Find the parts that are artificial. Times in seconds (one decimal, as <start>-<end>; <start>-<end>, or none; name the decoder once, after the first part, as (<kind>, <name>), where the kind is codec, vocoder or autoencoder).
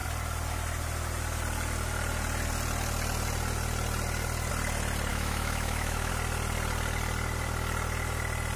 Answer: 5.1-6.1 (autoencoder, DAC-VAE)